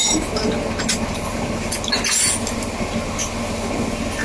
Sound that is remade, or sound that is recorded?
recorded